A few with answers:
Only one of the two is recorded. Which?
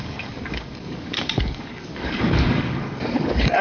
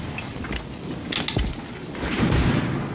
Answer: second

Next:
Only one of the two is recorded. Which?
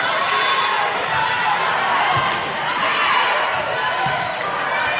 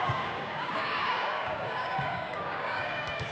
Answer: first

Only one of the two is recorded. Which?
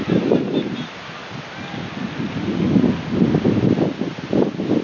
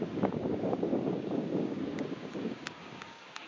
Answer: first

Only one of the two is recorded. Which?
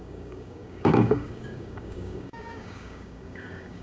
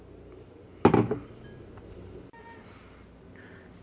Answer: second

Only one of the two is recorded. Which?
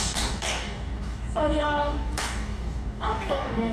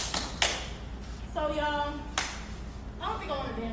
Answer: second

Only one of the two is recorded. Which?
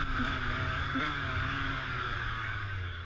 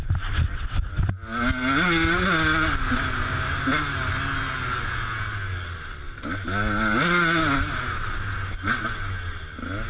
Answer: second